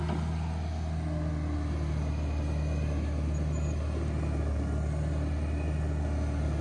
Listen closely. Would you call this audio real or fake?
real